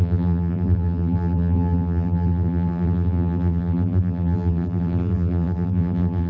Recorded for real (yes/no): no